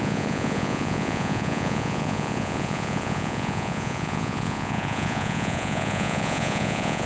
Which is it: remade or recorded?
remade